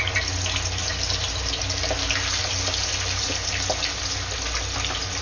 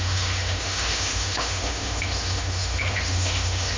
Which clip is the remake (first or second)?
second